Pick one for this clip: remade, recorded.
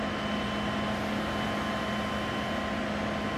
recorded